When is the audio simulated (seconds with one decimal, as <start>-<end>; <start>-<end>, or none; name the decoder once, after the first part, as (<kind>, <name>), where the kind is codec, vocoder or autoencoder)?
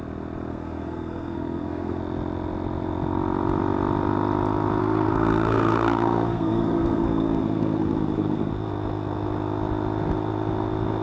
0.5-2.0 (codec, SNAC); 4.8-8.5